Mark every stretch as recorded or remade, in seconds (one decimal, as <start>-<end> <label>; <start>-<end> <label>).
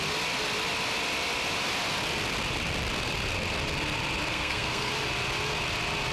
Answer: 0.0-4.3 recorded; 4.3-4.9 remade; 4.9-6.1 recorded